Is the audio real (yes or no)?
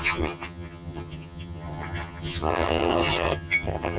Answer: no